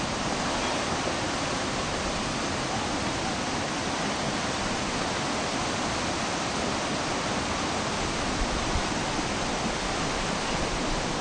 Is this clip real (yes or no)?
yes